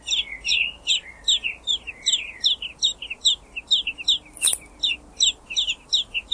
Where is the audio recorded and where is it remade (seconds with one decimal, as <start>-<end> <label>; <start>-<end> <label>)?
0.0-6.3 recorded